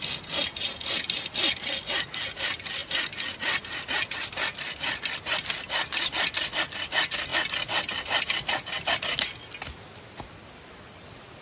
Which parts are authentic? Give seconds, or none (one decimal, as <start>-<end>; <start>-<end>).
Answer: 0.0-11.4